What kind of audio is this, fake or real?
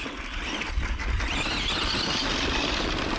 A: real